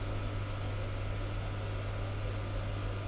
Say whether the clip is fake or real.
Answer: real